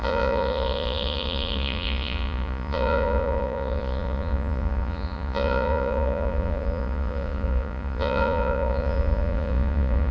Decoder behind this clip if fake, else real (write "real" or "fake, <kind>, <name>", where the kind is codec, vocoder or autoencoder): fake, vocoder, Vocos